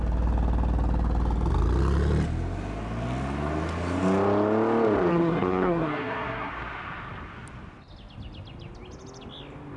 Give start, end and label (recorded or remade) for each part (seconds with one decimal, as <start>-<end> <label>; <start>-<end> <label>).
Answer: 0.0-5.1 recorded; 5.1-6.5 remade; 6.5-9.8 recorded